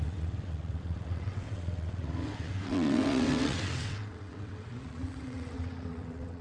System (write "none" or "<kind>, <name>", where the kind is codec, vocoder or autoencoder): vocoder, WaveNeXt